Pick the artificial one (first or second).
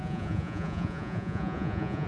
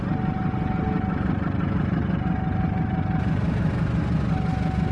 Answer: first